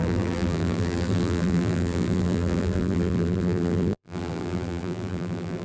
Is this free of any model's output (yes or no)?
no